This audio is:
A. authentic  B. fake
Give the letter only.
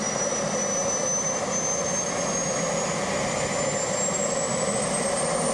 A